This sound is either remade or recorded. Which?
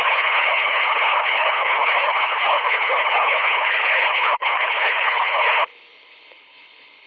remade